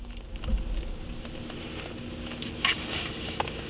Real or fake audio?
real